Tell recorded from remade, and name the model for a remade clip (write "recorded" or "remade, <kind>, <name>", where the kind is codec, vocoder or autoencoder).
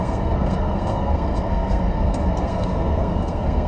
remade, codec, SNAC